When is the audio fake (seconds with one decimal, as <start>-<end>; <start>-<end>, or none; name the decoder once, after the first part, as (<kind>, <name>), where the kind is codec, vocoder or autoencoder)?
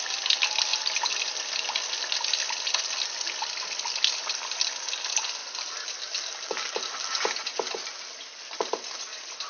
none